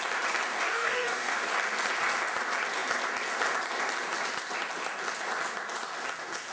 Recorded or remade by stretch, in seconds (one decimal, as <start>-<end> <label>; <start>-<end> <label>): 0.0-0.5 recorded; 0.5-1.5 remade; 1.5-6.5 recorded